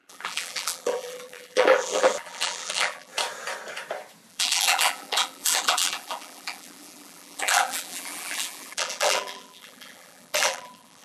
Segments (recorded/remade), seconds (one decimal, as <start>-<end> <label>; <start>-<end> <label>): 0.0-3.1 remade; 3.1-4.3 recorded; 4.3-11.0 remade

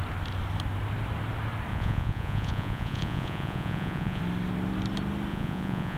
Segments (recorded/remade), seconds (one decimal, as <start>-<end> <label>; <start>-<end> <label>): 0.0-1.7 recorded; 1.7-4.2 remade; 4.2-5.3 recorded; 5.3-6.0 remade

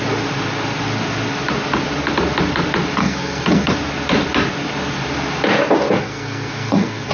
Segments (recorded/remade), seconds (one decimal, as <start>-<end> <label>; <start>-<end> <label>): 0.0-3.0 recorded; 3.0-3.7 remade; 3.7-6.0 recorded; 6.0-7.1 remade

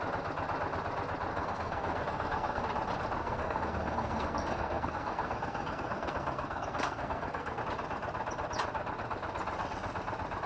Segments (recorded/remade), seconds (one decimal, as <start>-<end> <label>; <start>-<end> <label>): 0.0-1.3 recorded; 1.3-2.6 remade; 2.6-3.2 recorded; 3.2-7.6 remade; 7.6-10.5 recorded